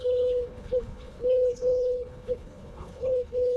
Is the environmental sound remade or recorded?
remade